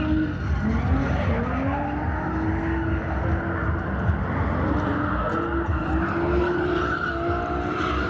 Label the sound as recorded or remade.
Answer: recorded